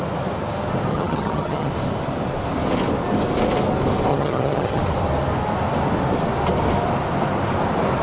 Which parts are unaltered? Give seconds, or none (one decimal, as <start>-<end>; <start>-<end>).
0.0-0.9; 1.7-4.1; 4.8-8.0